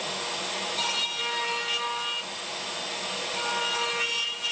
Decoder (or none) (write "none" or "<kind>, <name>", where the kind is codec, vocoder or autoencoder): none